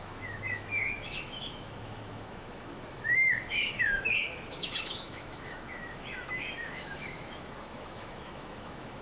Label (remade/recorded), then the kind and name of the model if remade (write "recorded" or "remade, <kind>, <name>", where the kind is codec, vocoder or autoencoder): remade, autoencoder, DAC-VAE